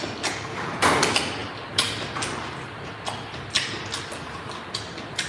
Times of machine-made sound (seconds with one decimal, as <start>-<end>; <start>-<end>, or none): none